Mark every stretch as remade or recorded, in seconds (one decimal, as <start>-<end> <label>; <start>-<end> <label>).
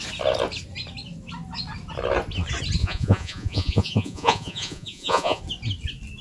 0.0-2.8 recorded; 2.8-5.4 remade; 5.4-6.2 recorded